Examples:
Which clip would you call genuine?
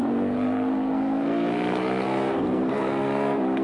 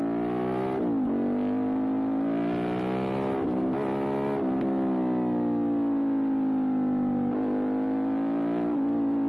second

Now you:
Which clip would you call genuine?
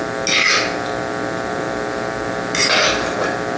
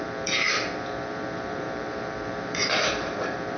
first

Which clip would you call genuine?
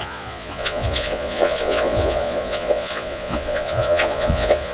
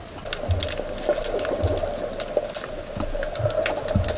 second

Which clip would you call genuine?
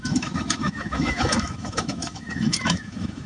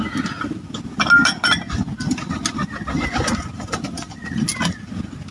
second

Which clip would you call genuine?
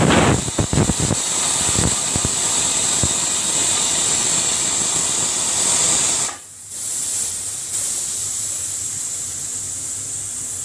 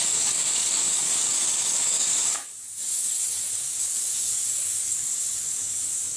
first